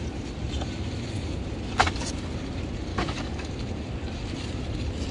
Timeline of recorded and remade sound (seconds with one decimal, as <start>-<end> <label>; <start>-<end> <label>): 0.0-2.9 recorded; 2.9-3.5 remade; 3.5-5.1 recorded